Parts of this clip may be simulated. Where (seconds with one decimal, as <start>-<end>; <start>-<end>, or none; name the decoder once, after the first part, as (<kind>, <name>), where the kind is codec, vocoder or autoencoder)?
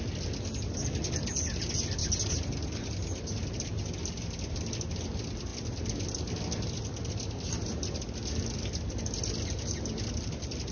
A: none